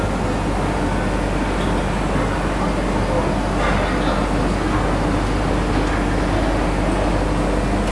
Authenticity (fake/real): real